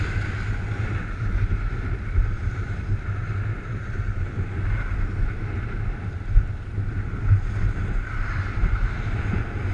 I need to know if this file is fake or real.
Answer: real